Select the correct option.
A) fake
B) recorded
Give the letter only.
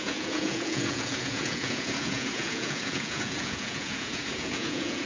A